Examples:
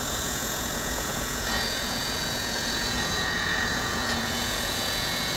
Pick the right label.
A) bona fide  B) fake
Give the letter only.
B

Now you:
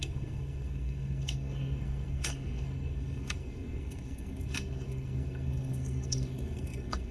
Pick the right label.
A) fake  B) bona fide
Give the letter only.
A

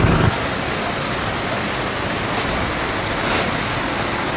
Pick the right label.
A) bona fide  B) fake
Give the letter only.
A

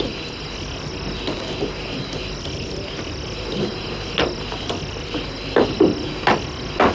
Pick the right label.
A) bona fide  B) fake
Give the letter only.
A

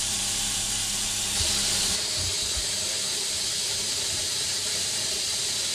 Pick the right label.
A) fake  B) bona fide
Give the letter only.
A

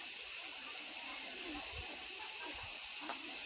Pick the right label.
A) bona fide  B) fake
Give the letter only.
B